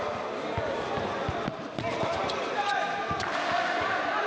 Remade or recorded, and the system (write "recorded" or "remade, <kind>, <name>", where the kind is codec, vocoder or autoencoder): recorded